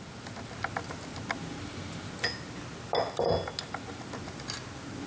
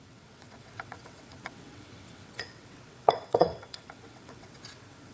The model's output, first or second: second